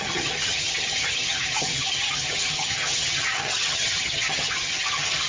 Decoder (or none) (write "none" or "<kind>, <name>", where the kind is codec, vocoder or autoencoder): vocoder, HiFi-GAN